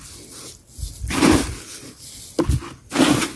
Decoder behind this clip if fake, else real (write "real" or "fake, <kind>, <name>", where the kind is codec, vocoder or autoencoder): real